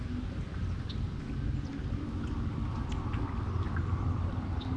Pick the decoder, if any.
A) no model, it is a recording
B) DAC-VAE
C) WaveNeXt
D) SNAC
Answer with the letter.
A